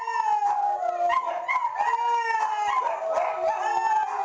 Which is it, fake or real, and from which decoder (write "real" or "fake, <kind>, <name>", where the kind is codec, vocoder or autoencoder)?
real